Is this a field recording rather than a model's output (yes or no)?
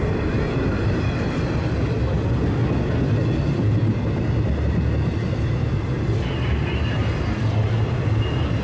yes